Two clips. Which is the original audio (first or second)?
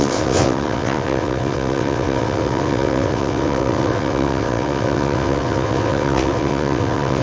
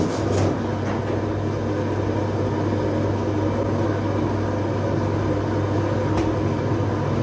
second